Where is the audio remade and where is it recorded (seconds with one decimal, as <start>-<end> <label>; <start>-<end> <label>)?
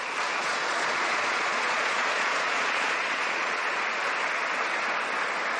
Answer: 0.0-0.4 recorded; 0.4-3.8 remade; 3.8-5.6 recorded